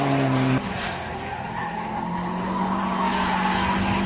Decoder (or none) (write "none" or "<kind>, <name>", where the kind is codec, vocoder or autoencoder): none